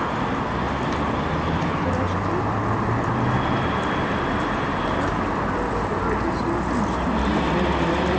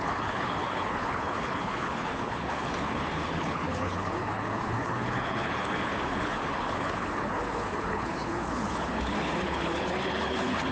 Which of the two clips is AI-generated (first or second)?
second